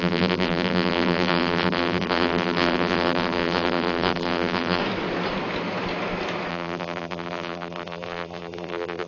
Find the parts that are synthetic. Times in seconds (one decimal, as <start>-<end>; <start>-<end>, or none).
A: 0.0-4.8; 6.5-9.1